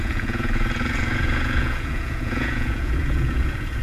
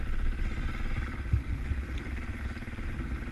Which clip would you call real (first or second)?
second